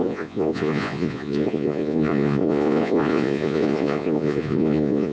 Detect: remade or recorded remade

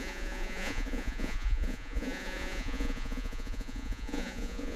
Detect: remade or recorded remade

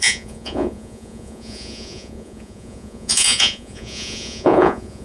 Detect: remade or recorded remade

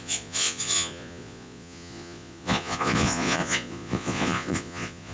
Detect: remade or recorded remade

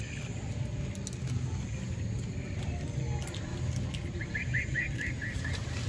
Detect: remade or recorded recorded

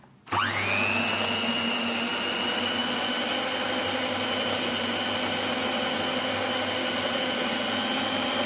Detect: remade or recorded recorded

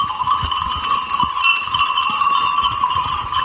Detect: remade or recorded remade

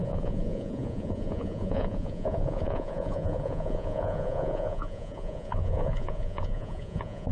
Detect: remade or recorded remade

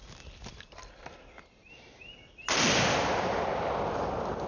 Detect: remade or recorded recorded